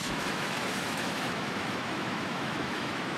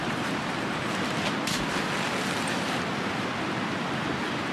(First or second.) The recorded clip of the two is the second